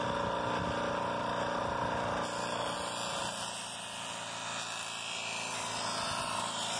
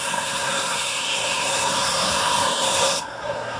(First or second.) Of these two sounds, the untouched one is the first